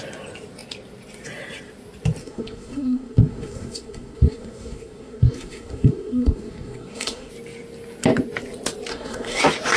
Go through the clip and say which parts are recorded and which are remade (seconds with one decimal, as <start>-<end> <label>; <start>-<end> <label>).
0.0-2.2 recorded; 2.2-7.3 remade; 7.3-8.9 recorded; 8.9-9.4 remade; 9.4-9.8 recorded